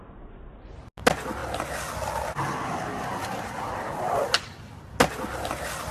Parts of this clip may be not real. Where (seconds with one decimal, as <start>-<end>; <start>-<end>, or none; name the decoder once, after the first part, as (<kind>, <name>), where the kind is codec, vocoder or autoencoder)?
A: none